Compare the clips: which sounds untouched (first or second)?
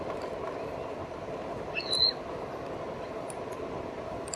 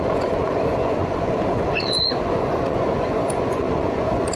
first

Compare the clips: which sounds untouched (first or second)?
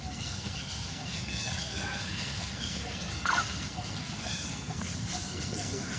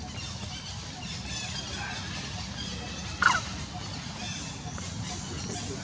second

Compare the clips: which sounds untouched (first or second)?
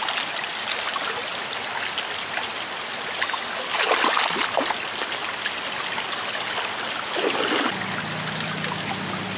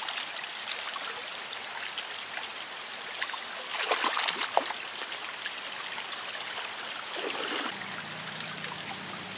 first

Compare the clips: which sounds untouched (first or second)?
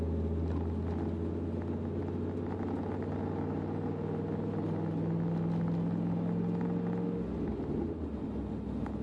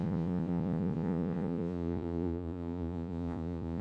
first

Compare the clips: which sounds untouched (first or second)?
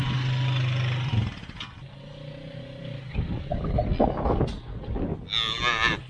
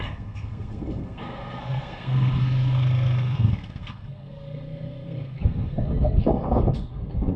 first